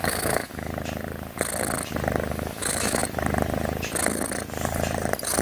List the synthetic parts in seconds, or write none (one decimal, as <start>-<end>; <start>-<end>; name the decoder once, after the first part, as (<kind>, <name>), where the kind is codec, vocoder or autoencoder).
0.0-0.7 (autoencoder, DAC-VAE); 2.3-3.0